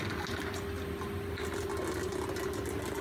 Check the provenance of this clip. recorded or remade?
recorded